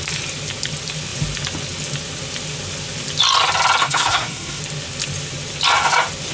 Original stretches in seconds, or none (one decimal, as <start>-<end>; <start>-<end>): 0.0-3.8; 4.6-6.3